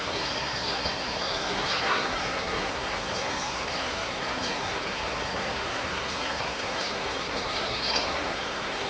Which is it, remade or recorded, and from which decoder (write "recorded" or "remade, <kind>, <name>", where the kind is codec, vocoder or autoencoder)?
remade, codec, SNAC